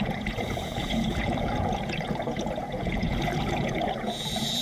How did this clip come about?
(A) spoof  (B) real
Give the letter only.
A